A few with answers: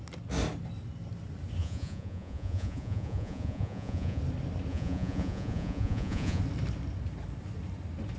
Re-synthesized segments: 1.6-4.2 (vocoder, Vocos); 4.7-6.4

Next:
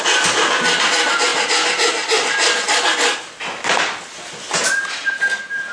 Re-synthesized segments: none